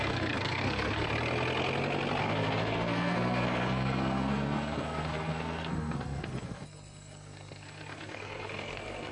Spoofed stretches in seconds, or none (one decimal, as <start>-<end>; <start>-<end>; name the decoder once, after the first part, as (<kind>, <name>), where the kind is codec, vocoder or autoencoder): 0.0-1.1 (codec, SNAC); 2.2-9.1